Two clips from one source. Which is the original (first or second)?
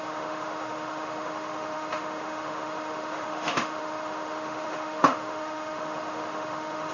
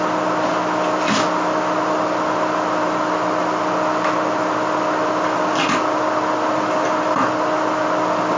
second